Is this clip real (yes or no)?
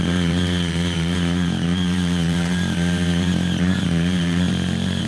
no